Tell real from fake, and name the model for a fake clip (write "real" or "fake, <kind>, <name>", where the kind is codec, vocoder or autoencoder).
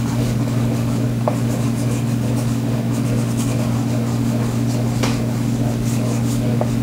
fake, codec, DAC